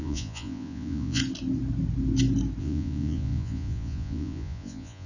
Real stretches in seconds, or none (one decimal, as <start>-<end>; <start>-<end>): 1.2-2.6